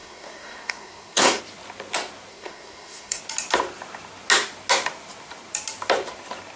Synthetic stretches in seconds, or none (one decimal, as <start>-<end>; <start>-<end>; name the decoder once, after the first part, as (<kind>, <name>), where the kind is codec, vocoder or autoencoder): 0.0-1.4 (codec, SNAC); 2.3-3.2